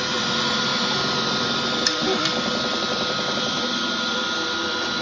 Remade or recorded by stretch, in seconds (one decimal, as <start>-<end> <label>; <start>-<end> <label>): 0.0-5.0 remade